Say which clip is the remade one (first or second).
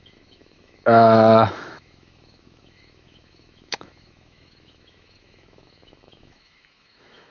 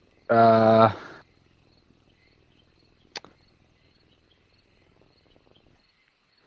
first